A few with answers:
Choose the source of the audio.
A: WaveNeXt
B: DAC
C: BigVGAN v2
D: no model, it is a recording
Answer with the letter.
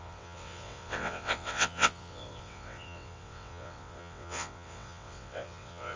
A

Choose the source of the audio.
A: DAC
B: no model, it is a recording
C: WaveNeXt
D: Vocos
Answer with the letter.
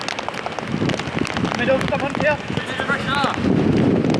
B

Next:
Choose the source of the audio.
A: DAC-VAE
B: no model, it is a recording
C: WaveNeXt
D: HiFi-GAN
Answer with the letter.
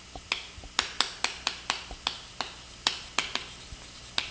B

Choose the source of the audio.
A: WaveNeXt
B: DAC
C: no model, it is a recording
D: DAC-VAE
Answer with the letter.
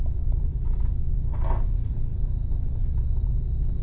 A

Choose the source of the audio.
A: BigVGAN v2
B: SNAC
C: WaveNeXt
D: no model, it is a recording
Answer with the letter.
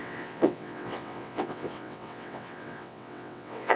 C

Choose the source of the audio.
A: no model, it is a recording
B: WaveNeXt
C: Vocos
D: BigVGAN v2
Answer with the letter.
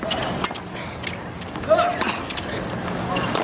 A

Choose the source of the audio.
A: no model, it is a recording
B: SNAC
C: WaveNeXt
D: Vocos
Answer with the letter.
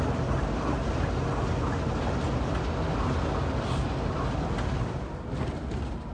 A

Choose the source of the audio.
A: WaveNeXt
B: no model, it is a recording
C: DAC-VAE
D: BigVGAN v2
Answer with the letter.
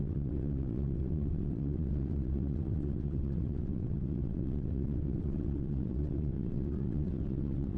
A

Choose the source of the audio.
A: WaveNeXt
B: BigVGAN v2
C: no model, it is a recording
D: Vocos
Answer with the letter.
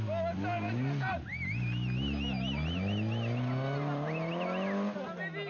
C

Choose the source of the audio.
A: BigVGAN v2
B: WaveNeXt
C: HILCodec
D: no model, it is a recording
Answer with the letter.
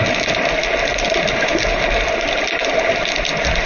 D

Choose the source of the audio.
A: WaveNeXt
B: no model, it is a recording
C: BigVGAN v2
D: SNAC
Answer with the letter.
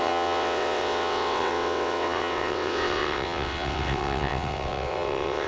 A